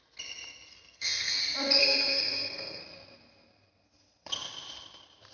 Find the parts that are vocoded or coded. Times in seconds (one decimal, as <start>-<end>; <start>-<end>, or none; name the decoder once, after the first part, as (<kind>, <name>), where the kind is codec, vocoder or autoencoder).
0.7-1.4 (codec, SNAC); 1.8-2.8